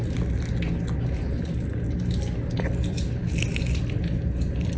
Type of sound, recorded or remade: recorded